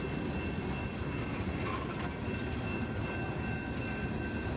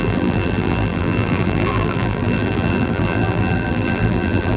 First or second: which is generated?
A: second